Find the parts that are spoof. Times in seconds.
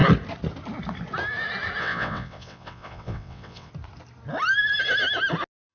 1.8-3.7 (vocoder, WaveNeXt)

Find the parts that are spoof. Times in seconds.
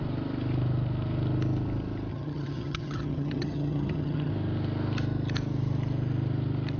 2.1-4.3 (vocoder, HiFi-GAN)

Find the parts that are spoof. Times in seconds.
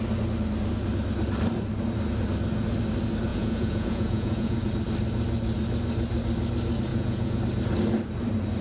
3.3-4.7 (vocoder, Vocos); 6.9-7.4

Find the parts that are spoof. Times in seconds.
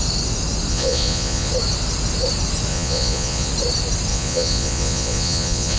0.7-1.5 (vocoder, Vocos); 2.7-3.5; 4.1-5.8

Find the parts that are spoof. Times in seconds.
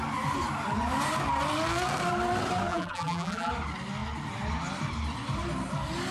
2.7-3.5 (vocoder, BigVGAN v2)